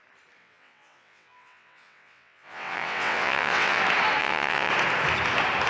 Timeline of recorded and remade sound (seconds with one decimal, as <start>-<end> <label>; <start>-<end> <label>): 0.0-0.4 recorded; 0.4-3.8 remade; 3.8-4.2 recorded; 4.2-4.7 remade; 4.7-5.7 recorded